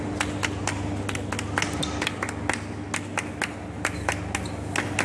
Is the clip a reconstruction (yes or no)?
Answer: no